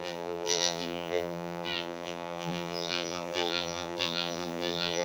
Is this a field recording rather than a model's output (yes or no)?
no